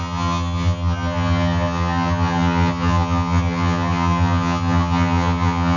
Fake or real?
fake